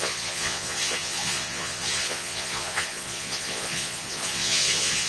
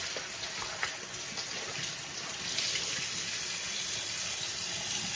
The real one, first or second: second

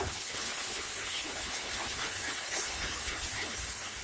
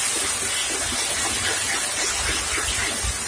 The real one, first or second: second